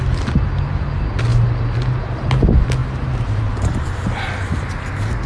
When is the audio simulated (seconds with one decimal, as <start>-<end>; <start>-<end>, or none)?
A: 2.8-3.4